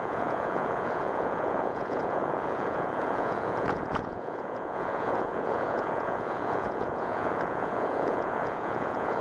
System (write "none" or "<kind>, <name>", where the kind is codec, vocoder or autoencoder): vocoder, Vocos